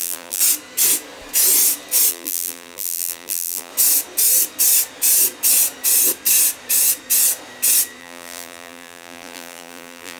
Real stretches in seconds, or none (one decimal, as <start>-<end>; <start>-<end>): 0.4-2.1; 3.7-8.0